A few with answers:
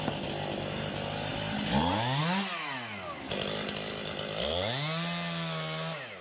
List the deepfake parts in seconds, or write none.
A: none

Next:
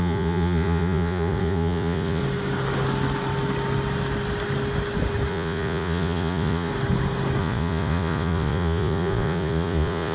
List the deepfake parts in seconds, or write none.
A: 0.0-2.2; 5.3-6.7; 7.4-10.1